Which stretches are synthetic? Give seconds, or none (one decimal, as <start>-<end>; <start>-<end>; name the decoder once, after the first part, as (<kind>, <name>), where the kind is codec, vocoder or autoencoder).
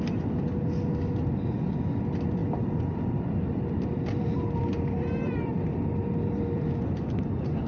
2.4-7.0 (vocoder, BigVGAN v2)